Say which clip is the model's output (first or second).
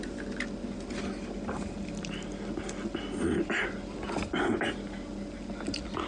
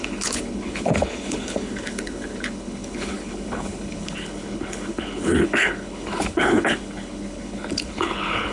second